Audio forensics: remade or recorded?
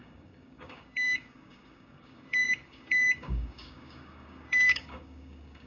remade